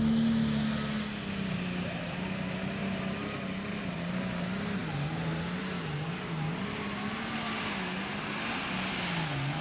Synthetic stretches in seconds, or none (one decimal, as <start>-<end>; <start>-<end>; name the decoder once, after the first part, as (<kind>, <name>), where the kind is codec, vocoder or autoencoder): none